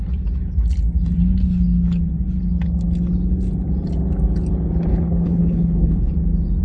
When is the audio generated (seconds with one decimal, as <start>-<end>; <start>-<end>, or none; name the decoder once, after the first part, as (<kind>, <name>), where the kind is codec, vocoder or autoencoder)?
4.9-6.1 (codec, HILCodec)

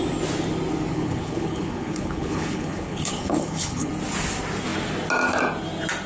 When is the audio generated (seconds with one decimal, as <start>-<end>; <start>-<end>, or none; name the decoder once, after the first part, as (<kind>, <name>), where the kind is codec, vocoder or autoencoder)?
0.9-3.9 (codec, HILCodec)

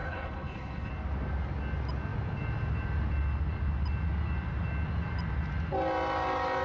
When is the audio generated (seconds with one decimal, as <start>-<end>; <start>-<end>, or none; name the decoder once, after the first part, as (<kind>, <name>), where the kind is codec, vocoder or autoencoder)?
0.0-0.9 (codec, HILCodec)

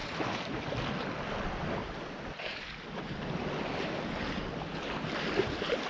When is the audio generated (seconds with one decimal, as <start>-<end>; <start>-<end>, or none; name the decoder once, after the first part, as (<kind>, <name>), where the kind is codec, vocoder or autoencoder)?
none

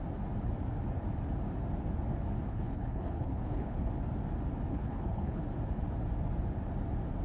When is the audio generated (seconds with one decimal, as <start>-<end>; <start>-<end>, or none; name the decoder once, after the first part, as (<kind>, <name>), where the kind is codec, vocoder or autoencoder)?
2.5-3.9 (codec, HILCodec); 4.7-5.4

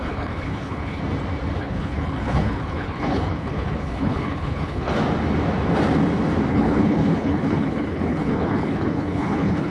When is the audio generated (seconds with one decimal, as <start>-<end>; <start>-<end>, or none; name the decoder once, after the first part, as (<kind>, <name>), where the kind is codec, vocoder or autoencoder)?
0.0-1.0 (codec, HILCodec); 1.6-4.9; 6.5-9.7

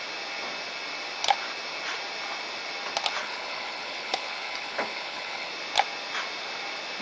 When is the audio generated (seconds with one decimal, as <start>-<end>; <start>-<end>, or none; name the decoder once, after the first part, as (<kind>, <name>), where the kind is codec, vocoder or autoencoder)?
3.2-5.5 (codec, HILCodec)

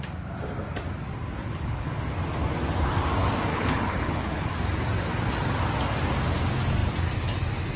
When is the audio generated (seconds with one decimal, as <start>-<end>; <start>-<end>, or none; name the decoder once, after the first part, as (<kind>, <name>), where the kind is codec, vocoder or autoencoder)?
1.4-2.0 (codec, HILCodec); 3.5-4.5